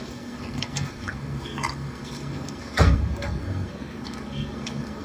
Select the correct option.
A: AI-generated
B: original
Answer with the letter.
A